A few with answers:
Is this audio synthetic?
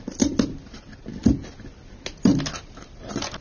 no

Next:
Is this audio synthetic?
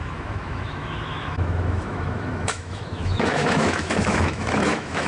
yes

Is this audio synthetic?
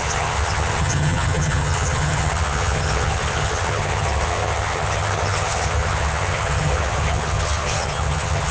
yes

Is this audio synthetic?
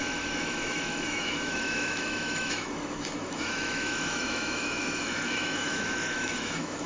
yes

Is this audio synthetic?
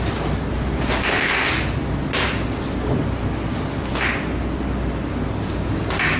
no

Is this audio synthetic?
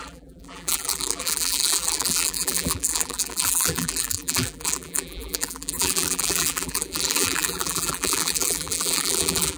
yes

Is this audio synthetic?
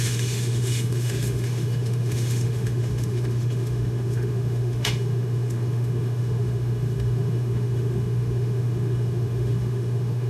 yes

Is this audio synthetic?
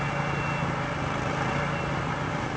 no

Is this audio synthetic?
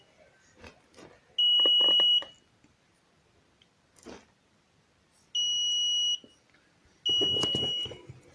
no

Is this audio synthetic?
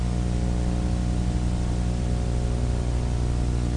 no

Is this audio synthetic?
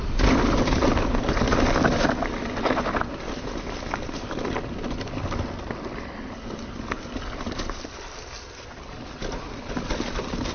no